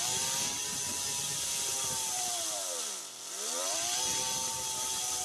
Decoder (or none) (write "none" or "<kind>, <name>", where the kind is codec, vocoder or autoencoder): none